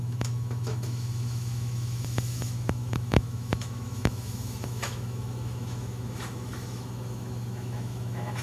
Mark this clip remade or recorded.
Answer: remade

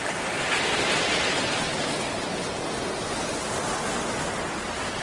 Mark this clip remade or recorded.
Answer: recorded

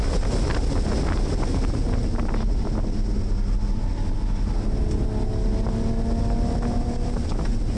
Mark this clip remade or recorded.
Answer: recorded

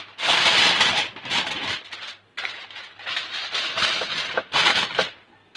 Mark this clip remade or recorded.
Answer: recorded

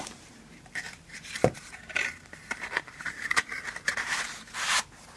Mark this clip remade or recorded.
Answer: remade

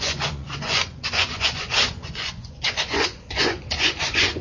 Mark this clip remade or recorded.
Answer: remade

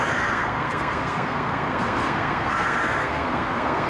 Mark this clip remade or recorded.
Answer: remade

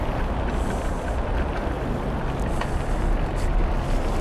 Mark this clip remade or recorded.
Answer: recorded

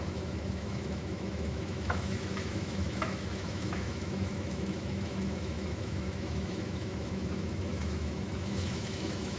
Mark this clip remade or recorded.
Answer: remade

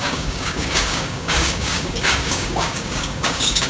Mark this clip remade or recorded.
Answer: remade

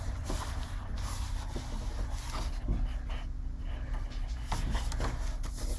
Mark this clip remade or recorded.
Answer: recorded